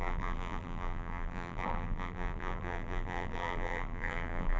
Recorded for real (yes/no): no